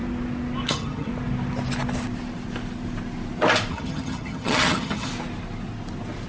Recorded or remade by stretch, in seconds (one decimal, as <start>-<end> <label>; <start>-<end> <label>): 0.0-0.7 recorded; 0.7-1.1 remade; 1.1-3.7 recorded; 3.7-5.1 remade; 5.1-6.3 recorded